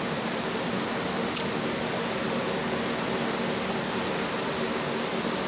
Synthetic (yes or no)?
no